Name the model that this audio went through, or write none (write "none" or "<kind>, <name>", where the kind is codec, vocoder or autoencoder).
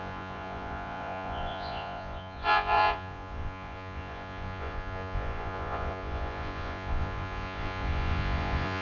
vocoder, Vocos